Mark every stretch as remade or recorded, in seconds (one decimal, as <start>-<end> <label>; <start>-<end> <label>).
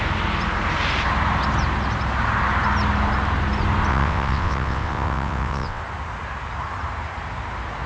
0.0-3.9 recorded; 3.9-5.8 remade; 5.8-7.9 recorded